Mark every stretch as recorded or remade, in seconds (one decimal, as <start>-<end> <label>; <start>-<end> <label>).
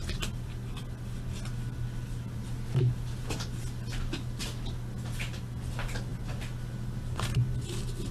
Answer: 0.0-8.1 recorded